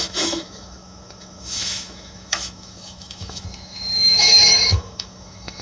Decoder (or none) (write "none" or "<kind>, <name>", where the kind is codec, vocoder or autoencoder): autoencoder, DAC-VAE